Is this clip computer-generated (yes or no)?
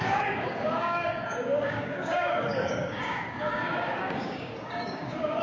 yes